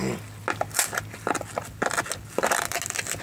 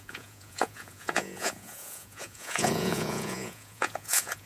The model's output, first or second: second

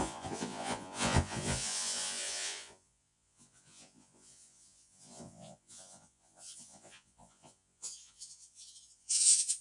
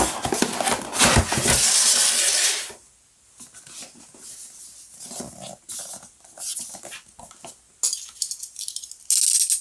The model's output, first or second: first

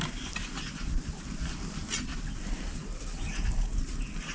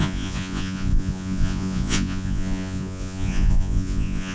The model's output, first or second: second